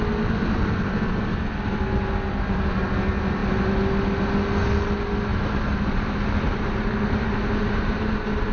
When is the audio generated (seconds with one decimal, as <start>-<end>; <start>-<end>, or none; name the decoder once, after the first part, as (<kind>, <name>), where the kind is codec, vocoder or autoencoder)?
5.3-8.5 (vocoder, BigVGAN v2)